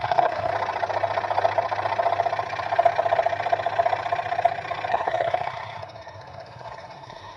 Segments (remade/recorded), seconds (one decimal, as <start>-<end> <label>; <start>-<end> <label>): 0.0-0.5 remade; 0.5-4.9 recorded; 4.9-7.4 remade